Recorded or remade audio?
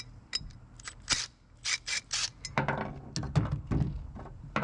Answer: recorded